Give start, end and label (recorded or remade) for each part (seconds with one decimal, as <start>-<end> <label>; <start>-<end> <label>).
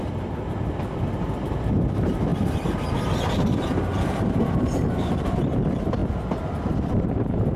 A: 0.0-7.6 remade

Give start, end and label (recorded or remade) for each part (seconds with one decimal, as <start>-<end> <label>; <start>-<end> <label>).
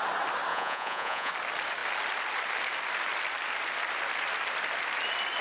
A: 0.0-0.5 recorded; 0.5-1.3 remade; 1.3-5.4 recorded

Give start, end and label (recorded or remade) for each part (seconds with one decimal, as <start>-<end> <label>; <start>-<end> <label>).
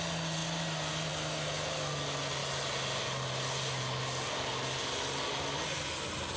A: 0.0-6.4 recorded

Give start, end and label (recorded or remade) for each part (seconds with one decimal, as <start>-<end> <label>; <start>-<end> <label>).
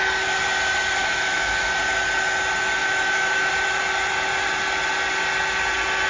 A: 0.0-1.0 recorded; 1.0-1.7 remade; 1.7-2.8 recorded; 2.8-3.5 remade; 3.5-6.1 recorded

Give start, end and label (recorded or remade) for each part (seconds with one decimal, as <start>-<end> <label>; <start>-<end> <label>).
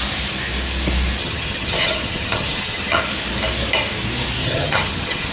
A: 0.0-1.2 recorded; 1.2-3.0 remade; 3.0-4.4 recorded; 4.4-5.3 remade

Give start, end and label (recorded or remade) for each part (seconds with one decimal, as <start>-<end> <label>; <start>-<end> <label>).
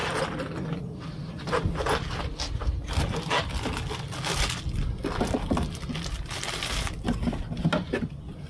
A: 0.0-8.5 recorded